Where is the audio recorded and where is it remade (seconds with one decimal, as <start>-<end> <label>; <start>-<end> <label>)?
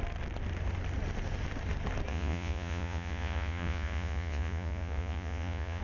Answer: 0.0-2.1 recorded; 2.1-5.8 remade